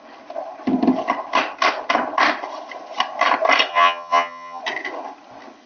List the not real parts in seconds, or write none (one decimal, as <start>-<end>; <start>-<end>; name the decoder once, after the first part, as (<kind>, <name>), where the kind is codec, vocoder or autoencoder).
3.7-4.6 (vocoder, HiFi-GAN)